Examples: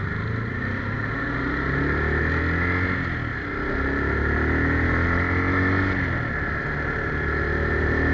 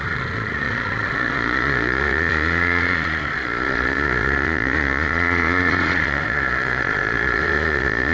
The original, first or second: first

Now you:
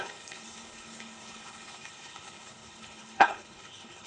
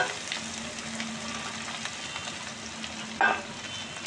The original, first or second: second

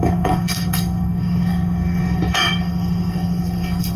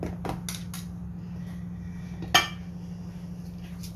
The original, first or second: second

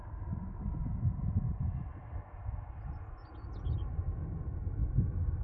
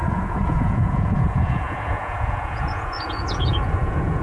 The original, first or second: first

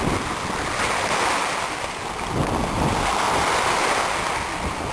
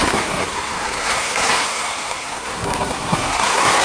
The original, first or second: first